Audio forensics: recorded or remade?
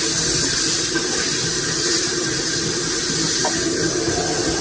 recorded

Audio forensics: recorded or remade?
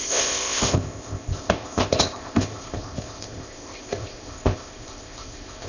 remade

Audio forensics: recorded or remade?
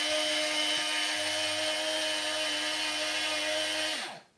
recorded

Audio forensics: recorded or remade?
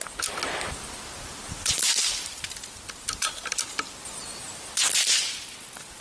recorded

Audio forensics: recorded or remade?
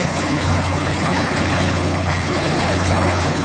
remade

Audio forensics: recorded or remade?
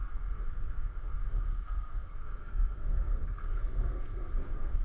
remade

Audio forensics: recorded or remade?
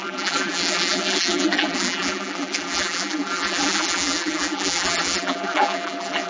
remade